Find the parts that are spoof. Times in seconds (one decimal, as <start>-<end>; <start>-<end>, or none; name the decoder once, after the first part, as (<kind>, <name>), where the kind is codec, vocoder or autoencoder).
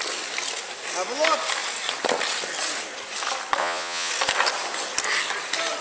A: 3.6-4.1 (vocoder, Vocos)